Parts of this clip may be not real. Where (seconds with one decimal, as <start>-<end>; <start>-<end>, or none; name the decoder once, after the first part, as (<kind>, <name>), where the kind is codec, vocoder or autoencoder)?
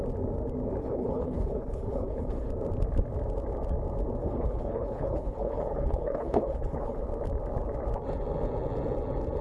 0.8-2.5 (codec, HILCodec); 4.2-7.0